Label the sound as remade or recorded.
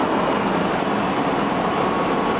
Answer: recorded